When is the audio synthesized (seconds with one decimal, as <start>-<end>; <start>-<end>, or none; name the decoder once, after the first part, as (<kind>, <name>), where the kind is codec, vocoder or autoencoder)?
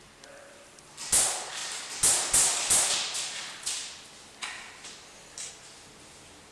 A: none